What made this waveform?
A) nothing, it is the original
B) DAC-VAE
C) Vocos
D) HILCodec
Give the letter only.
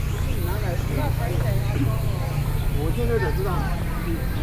A